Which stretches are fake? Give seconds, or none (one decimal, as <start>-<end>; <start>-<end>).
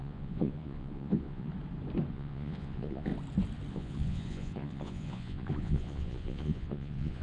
0.0-1.5; 2.1-3.1; 3.7-7.2